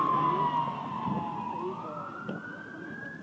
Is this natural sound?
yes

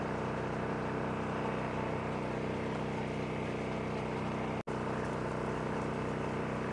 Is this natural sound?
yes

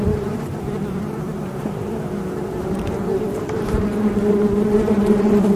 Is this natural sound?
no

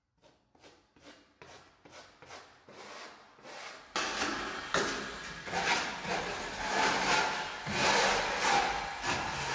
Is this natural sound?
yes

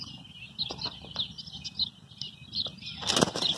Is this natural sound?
yes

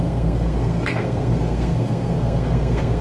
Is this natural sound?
no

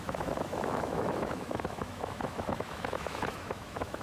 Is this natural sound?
no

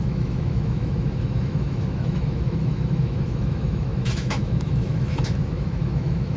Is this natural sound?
no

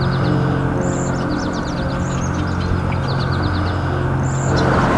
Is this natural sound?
yes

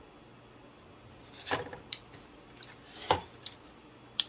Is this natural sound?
yes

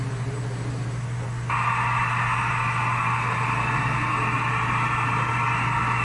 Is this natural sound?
yes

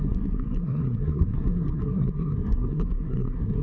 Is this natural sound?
no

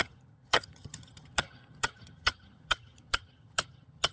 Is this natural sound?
no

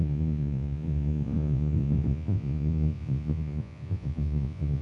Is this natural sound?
no